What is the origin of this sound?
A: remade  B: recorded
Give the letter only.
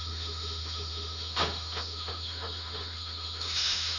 A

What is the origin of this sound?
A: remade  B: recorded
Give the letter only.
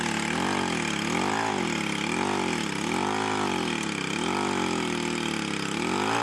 B